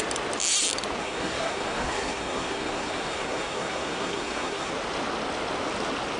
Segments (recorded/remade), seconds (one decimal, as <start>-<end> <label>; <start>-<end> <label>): 0.0-1.0 recorded; 1.0-4.7 remade; 4.7-6.2 recorded